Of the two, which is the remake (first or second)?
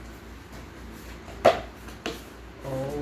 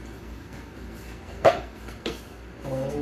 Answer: second